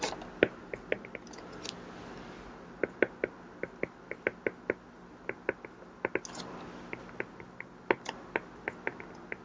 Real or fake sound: real